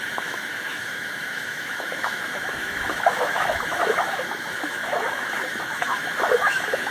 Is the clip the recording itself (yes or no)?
no